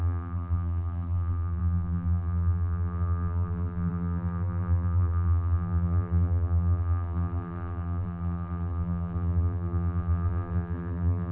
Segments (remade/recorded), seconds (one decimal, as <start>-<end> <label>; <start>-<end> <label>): 0.0-11.3 remade